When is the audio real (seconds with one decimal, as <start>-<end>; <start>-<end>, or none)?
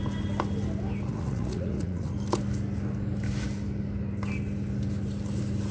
0.0-1.1; 2.1-5.7